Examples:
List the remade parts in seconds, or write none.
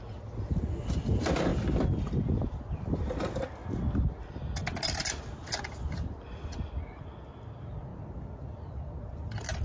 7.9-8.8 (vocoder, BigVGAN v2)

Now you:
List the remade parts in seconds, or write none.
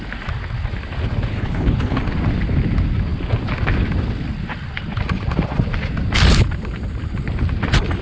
1.3-2.0 (codec, HILCodec)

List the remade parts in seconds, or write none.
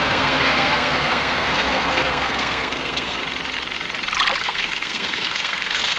0.0-3.2 (codec, SNAC); 4.4-6.0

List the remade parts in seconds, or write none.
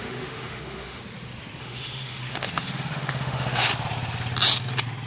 0.0-1.0 (autoencoder, DAC-VAE); 1.6-3.7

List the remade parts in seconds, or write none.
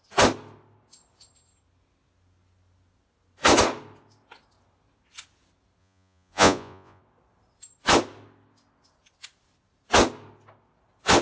5.8-7.0 (vocoder, Vocos)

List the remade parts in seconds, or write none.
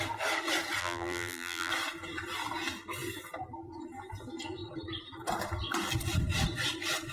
0.8-1.7 (vocoder, BigVGAN v2)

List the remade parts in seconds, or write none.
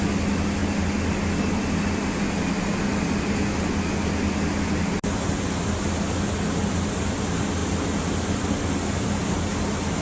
none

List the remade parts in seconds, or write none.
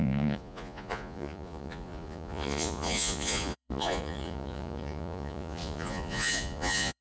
0.0-7.0 (vocoder, Vocos)